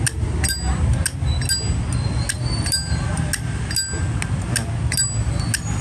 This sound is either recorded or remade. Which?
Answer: recorded